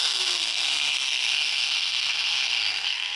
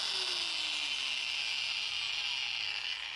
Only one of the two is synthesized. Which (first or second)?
first